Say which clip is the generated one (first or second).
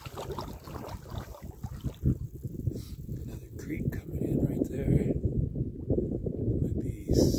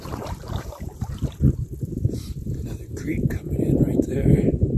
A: second